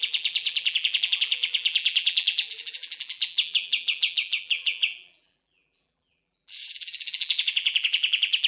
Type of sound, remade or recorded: remade